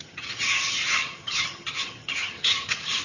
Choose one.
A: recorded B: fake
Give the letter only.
B